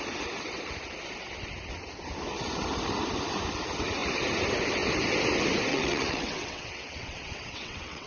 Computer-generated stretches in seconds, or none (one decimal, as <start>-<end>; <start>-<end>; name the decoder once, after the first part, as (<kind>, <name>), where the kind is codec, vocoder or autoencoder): 5.7-8.1 (vocoder, WaveNeXt)